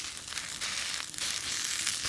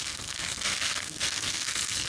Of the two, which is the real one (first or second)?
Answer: first